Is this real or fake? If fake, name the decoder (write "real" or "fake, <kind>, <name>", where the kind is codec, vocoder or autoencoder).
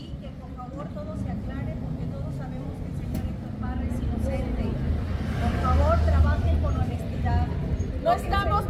real